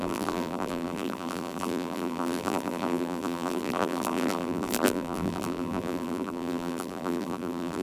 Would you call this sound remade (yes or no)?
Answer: yes